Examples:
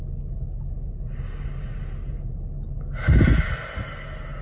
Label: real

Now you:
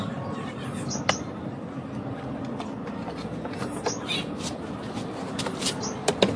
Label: real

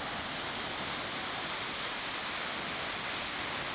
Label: real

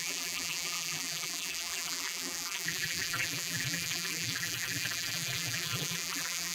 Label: fake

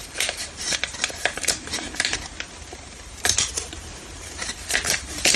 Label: fake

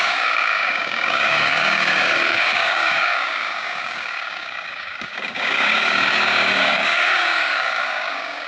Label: fake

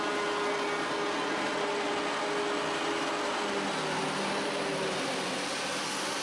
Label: real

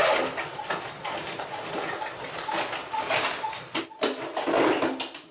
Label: real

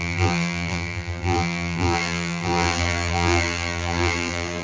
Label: fake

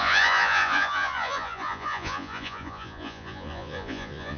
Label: fake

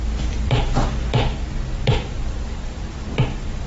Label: fake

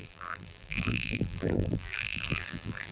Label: fake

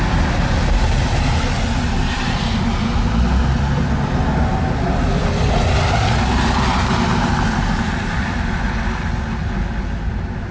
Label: real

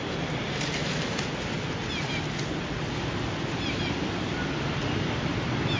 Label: real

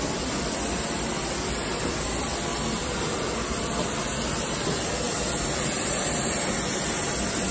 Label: fake